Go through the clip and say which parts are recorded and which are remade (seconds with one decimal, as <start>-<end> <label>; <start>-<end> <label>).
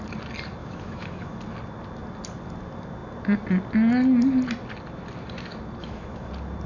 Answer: 0.0-0.6 recorded; 0.6-1.4 remade; 1.4-5.8 recorded; 5.8-6.3 remade; 6.3-6.7 recorded